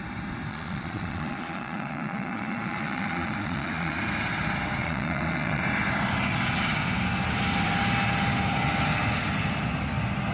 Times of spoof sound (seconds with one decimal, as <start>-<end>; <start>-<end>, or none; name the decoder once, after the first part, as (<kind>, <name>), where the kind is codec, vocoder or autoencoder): 0.5-4.0 (vocoder, Vocos); 4.8-5.6